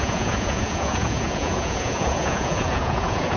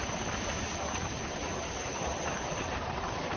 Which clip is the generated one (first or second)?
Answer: first